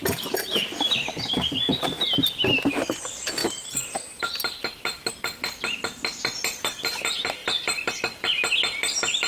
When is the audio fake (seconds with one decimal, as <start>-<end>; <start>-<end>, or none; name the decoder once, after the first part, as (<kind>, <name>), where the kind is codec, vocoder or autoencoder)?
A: 3.4-5.1 (vocoder, BigVGAN v2); 7.4-8.0